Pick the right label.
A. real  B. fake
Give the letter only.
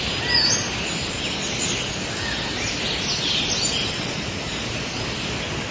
A